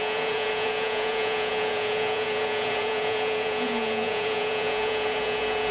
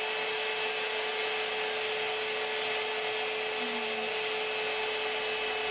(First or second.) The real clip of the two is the second